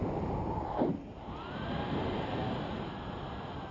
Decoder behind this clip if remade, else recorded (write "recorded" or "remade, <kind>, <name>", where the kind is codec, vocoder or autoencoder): recorded